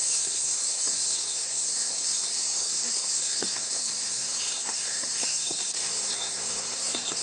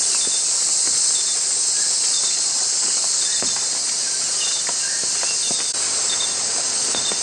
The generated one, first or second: first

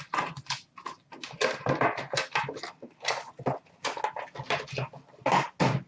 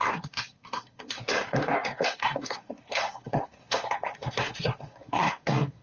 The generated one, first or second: second